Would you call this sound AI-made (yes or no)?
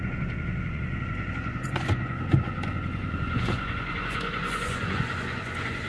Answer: yes